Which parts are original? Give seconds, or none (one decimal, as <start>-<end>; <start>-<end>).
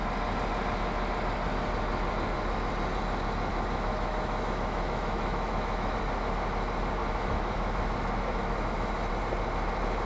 0.0-3.5; 6.0-7.0; 9.1-10.0